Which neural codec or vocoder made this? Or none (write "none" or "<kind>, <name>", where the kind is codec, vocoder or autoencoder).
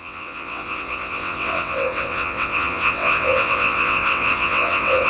vocoder, WaveNeXt